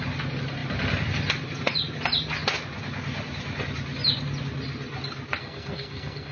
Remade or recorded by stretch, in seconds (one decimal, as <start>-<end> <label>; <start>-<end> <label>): 0.0-5.4 recorded; 5.4-6.3 remade